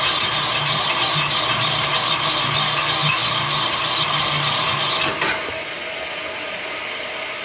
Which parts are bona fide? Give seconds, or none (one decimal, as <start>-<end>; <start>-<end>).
0.0-7.4

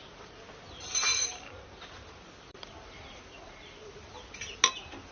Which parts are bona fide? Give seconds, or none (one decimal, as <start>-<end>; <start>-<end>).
0.0-5.1

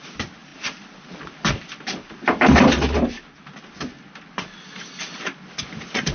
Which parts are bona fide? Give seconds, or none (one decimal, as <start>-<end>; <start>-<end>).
0.0-6.1

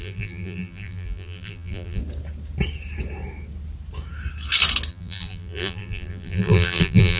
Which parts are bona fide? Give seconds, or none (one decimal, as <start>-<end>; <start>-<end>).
2.0-4.9

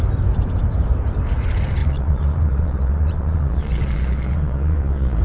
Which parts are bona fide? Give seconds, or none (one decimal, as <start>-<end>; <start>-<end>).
0.0-1.8

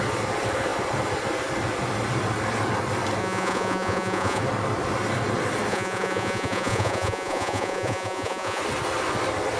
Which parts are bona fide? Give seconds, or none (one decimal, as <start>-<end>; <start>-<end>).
0.0-3.2; 4.4-5.7; 8.6-9.6

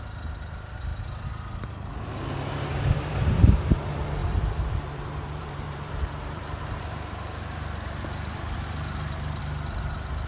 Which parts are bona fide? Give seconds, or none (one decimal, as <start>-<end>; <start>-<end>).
0.0-2.7; 3.7-4.2; 9.4-10.3

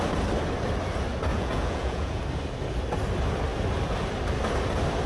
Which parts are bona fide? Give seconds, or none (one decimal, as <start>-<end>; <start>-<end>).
0.0-1.3; 2.2-5.1